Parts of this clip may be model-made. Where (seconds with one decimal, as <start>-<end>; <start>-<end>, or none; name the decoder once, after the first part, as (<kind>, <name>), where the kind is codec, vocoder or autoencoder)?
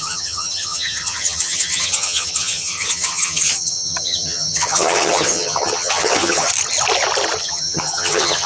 0.0-6.5 (vocoder, HiFi-GAN); 7.4-8.5